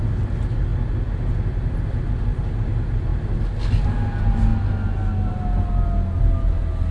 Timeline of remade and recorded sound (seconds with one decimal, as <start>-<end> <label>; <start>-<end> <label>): 0.0-6.9 recorded